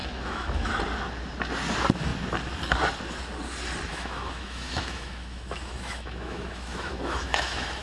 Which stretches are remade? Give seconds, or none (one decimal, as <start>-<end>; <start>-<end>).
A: 0.0-0.7; 3.9-7.8